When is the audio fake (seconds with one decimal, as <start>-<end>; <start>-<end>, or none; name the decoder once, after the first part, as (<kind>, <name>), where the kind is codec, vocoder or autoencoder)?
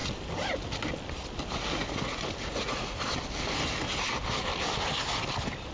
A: 2.5-3.0 (vocoder, Vocos)